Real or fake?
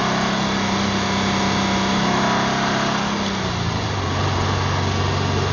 real